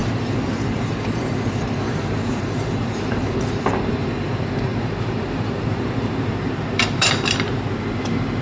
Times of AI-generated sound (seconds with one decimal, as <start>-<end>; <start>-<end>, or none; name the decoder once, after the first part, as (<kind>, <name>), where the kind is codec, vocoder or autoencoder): 0.0-8.4 (vocoder, BigVGAN v2)